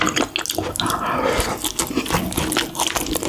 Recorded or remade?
recorded